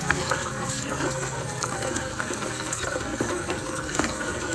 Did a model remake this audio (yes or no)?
yes